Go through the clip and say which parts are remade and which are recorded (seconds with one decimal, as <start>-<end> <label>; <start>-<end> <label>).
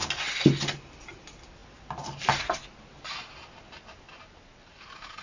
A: 0.0-5.2 recorded